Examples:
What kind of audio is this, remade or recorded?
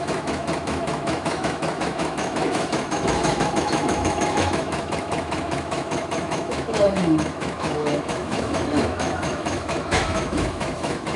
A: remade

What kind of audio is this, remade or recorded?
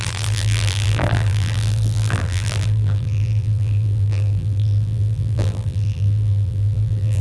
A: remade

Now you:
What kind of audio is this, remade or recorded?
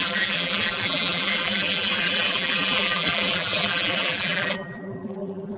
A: remade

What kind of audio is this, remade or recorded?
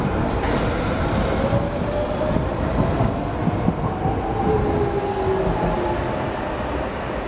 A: recorded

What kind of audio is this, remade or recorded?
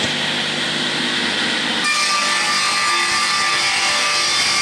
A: recorded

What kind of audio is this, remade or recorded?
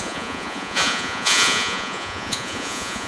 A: remade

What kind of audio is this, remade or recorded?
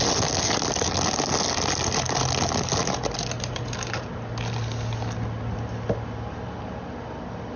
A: recorded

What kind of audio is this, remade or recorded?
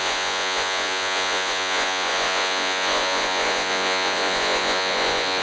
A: remade